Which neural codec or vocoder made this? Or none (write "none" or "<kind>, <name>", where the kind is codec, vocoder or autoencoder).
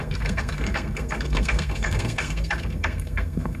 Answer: codec, SNAC